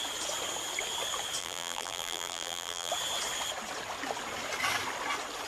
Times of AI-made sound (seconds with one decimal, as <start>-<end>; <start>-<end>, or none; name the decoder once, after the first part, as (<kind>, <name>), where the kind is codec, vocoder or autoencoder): 1.4-2.9 (vocoder, BigVGAN v2)